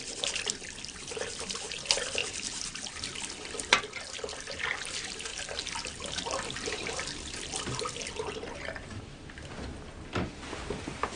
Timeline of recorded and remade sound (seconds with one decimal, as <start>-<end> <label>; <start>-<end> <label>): 0.0-2.2 recorded; 2.2-2.9 remade; 2.9-5.3 recorded; 5.3-7.0 remade; 7.0-11.2 recorded